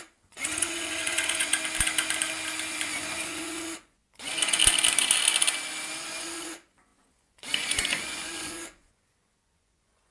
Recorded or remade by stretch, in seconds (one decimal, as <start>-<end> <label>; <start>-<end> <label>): 0.0-1.5 remade; 1.5-2.7 recorded; 2.7-4.6 remade; 4.6-6.0 recorded; 6.0-10.1 remade